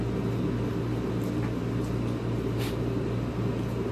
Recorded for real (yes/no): yes